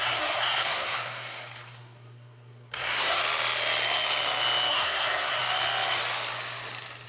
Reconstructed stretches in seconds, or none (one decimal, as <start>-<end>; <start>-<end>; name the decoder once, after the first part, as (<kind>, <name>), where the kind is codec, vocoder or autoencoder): 0.0-3.2 (codec, SNAC); 4.7-5.4